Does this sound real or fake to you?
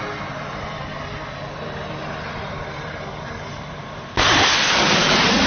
real